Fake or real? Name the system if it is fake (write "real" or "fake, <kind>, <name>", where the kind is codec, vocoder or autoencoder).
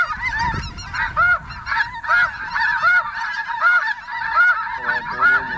real